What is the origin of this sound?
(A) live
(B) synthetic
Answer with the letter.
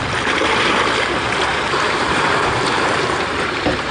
B